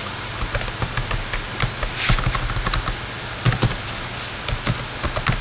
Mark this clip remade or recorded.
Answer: recorded